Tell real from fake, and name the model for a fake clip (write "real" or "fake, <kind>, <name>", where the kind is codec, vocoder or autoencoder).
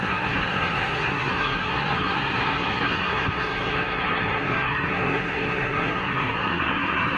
fake, codec, SNAC